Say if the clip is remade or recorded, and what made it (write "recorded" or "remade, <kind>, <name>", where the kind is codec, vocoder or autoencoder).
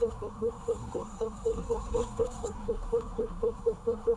remade, codec, SNAC